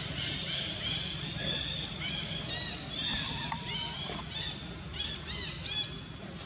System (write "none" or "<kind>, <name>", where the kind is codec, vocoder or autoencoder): none